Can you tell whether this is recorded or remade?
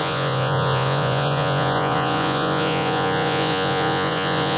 remade